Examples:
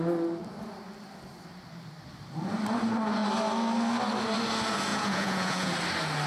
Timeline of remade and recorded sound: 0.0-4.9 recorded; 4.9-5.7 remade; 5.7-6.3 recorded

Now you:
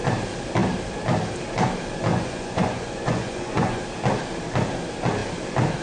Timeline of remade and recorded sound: 0.0-2.1 recorded; 2.1-3.8 remade; 3.8-5.8 recorded

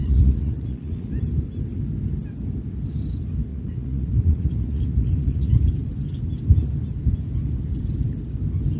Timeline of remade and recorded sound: 0.0-1.1 remade; 1.1-3.5 recorded; 3.5-5.5 remade; 5.5-8.8 recorded

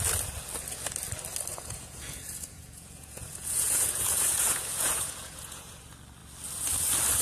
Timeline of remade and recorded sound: 0.0-1.5 recorded; 1.5-5.8 remade; 5.8-7.2 recorded